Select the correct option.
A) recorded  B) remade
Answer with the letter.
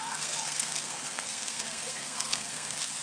B